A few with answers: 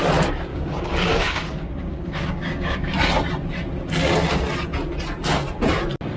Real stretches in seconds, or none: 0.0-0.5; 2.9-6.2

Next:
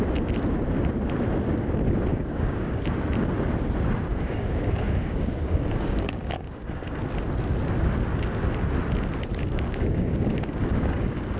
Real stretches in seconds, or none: 0.0-2.1; 2.8-4.1; 7.0-9.4